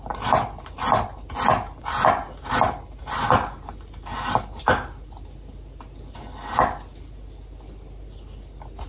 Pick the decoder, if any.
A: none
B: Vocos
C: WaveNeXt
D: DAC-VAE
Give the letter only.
A